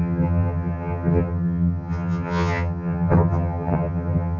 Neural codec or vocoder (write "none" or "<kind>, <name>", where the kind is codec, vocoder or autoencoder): vocoder, HiFi-GAN